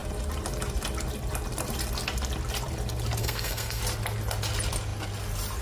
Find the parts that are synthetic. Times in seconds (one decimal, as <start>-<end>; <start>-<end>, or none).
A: 3.2-3.8